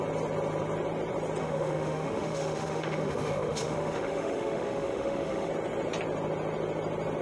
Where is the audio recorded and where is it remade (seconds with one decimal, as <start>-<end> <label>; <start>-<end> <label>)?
0.0-1.4 recorded; 1.4-5.5 remade; 5.5-7.2 recorded

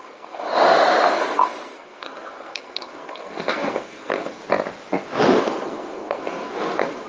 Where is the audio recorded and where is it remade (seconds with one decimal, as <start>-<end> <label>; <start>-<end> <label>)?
0.0-0.5 remade; 0.5-1.1 recorded; 1.1-4.4 remade; 4.4-5.4 recorded; 5.4-7.1 remade

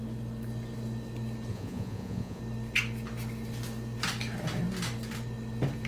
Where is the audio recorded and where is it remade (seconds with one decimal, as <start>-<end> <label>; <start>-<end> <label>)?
0.0-1.5 recorded; 1.5-2.4 remade; 2.4-5.9 recorded

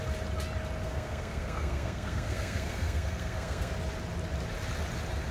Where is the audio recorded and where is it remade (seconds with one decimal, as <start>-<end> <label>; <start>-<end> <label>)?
0.0-0.8 recorded; 0.8-3.7 remade; 3.7-5.3 recorded